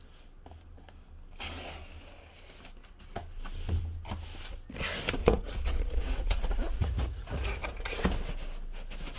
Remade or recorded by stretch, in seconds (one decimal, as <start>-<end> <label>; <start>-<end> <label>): 0.0-5.2 recorded; 5.2-8.0 remade; 8.0-9.2 recorded

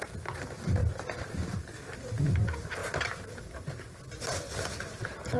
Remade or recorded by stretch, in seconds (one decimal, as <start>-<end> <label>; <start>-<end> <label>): 0.0-0.8 recorded; 0.8-1.7 remade; 1.7-2.8 recorded; 2.8-4.0 remade; 4.0-5.4 recorded

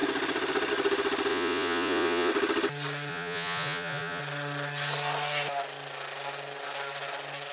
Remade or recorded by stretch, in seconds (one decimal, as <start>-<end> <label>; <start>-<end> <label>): 0.0-1.3 recorded; 1.3-2.3 remade; 2.3-3.1 recorded; 3.1-4.2 remade; 4.2-7.5 recorded

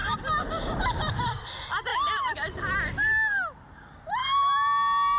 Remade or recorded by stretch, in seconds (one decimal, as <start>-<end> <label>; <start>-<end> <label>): 0.0-1.9 recorded; 1.9-2.9 remade; 2.9-5.2 recorded

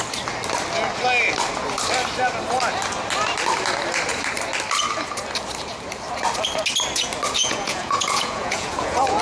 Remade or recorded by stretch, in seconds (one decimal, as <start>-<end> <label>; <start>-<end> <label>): 0.0-7.4 recorded; 7.4-9.2 remade

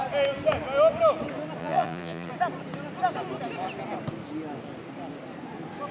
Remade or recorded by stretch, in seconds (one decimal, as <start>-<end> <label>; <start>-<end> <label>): 0.0-1.6 recorded; 1.6-2.3 remade; 2.3-5.9 recorded